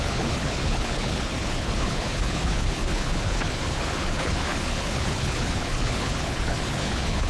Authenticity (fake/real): fake